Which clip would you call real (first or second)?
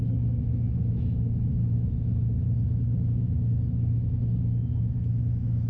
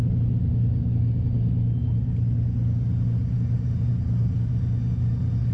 second